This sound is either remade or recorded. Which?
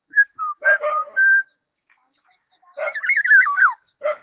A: remade